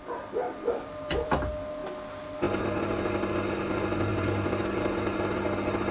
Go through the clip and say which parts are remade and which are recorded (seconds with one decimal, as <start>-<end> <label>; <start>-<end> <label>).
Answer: 0.0-0.4 recorded; 0.4-1.4 remade; 1.4-4.1 recorded; 4.1-4.6 remade; 4.6-5.9 recorded